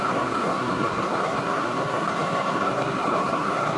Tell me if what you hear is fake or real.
fake